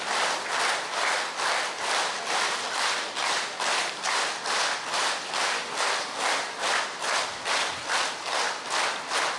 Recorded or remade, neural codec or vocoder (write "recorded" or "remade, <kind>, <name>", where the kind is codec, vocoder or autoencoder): recorded